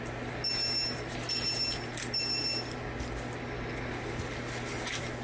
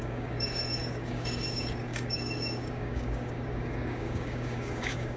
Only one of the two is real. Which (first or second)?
first